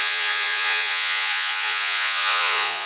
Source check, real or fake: fake